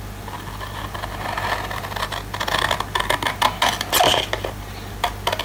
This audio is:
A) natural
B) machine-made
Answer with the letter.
A